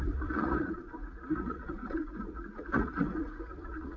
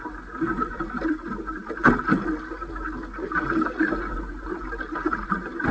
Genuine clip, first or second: second